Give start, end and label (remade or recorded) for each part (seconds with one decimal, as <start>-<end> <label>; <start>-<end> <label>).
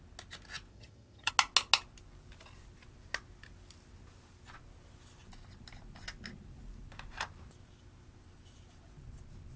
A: 0.0-0.7 recorded; 0.7-1.3 remade; 1.3-9.6 recorded